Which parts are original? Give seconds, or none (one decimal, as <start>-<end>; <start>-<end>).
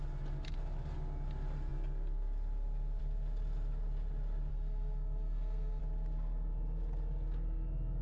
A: 0.0-4.5; 5.8-8.0